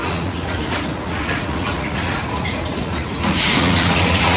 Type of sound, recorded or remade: remade